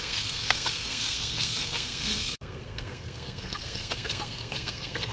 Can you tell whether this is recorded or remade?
remade